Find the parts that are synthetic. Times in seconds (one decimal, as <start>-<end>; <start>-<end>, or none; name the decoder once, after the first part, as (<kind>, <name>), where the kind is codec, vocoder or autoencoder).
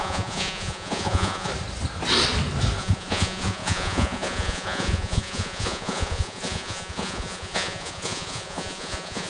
0.0-1.5 (vocoder, Vocos); 2.8-9.3